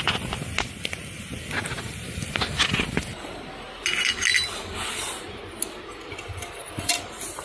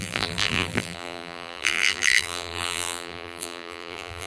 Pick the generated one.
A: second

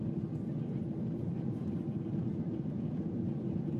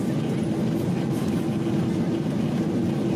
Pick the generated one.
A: first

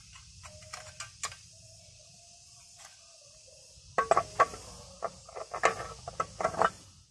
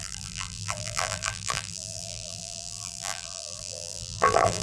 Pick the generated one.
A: second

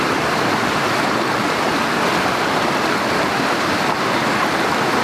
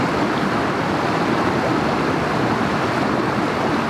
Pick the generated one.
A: first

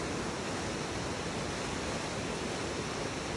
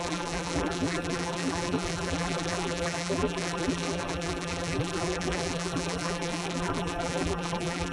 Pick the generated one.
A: second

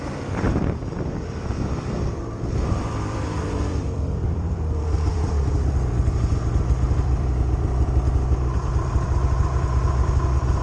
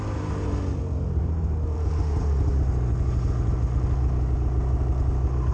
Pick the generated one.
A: first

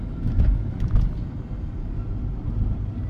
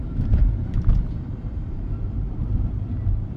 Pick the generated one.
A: second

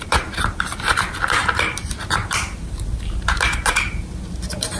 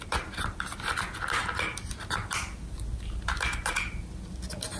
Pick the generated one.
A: first